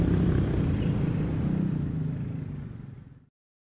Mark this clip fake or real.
real